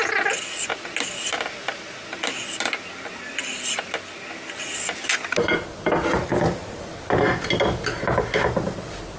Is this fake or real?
real